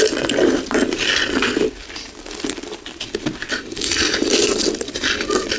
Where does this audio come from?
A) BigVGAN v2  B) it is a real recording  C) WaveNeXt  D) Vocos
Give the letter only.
B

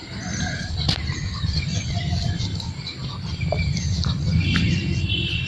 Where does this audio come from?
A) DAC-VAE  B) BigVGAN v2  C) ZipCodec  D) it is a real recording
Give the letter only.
B